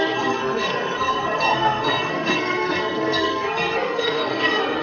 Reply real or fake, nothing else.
fake